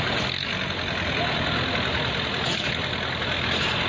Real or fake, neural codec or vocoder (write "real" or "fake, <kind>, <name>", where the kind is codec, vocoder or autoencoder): real